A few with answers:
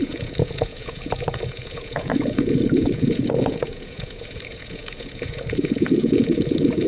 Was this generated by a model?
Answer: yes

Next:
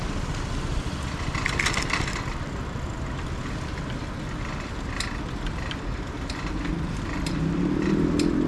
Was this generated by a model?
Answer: no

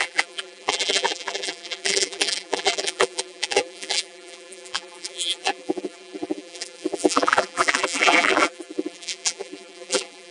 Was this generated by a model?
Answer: yes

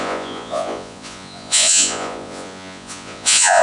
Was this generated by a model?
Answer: yes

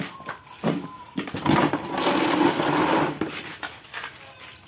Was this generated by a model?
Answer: no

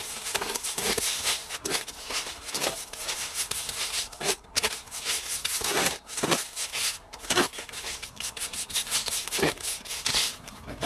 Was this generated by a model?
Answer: yes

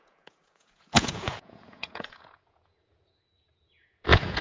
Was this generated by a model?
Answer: yes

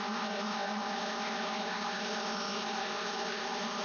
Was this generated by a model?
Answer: yes